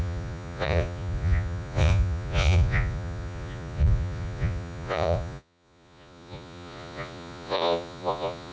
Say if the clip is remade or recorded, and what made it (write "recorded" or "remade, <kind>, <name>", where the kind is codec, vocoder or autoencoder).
remade, vocoder, Vocos